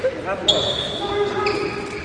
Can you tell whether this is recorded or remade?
recorded